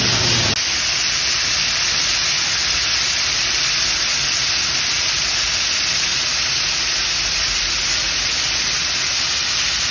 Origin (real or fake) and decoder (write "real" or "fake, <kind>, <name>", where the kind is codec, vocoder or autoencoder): real